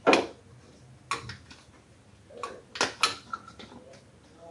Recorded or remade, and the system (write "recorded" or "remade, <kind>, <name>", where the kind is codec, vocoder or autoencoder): recorded